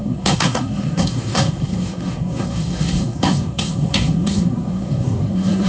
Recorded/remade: remade